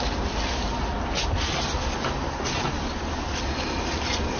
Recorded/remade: recorded